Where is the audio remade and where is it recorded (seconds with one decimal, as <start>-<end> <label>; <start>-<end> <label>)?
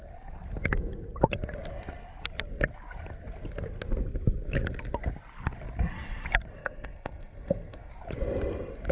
0.0-6.6 recorded; 6.6-7.9 remade; 7.9-8.9 recorded